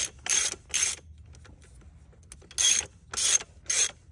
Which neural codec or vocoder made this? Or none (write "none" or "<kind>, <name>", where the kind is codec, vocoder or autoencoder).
none